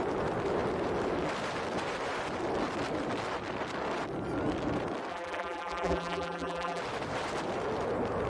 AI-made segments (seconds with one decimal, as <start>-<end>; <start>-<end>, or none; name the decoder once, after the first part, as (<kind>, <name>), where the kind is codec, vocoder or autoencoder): 5.1-6.8 (vocoder, BigVGAN v2)